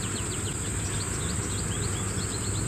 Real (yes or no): yes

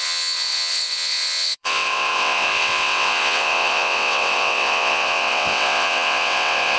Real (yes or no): no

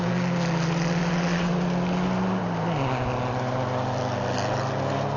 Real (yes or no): yes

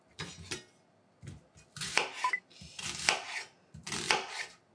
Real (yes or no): yes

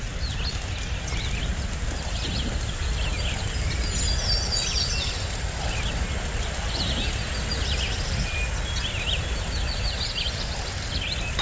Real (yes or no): yes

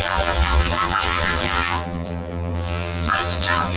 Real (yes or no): no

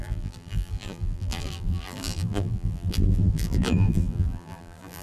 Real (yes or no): no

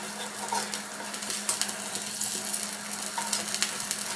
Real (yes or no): yes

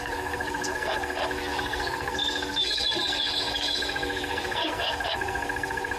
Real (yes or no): no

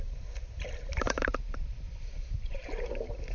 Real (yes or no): no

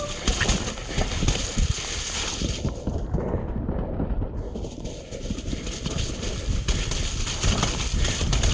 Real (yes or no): yes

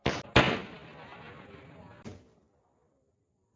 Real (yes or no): yes